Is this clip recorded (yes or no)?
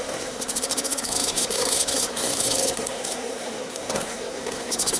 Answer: no